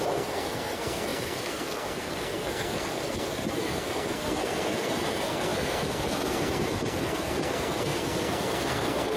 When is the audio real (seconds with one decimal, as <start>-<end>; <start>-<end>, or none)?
none